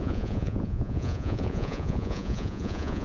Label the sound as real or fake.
fake